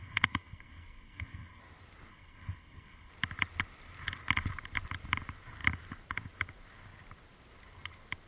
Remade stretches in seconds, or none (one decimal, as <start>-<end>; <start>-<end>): 0.0-1.6; 2.1-3.1